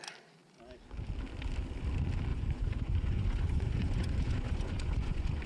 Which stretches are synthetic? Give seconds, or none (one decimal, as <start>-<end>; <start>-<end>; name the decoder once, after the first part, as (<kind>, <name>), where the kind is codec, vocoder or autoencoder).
2.3-5.5 (vocoder, Vocos)